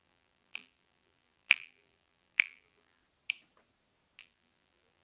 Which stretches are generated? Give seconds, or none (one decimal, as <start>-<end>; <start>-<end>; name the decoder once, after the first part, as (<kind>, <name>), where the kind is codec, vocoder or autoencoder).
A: 0.0-3.0 (vocoder, BigVGAN v2); 4.2-5.0